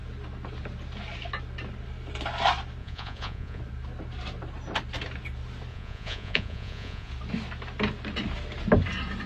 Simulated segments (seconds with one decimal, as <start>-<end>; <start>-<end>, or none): 2.8-3.6; 5.7-7.1